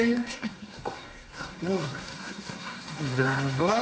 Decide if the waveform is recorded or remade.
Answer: remade